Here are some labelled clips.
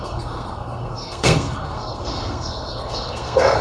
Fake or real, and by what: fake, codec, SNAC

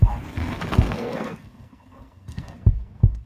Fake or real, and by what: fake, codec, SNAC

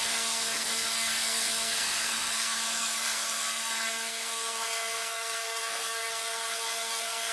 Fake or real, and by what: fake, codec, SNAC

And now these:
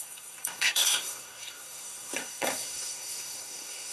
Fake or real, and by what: fake, codec, SNAC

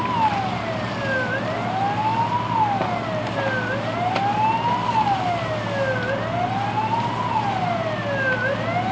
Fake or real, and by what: real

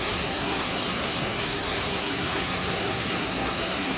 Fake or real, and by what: fake, codec, SNAC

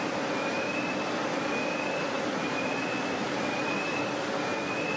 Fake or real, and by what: real